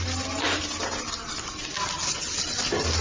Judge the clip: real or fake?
real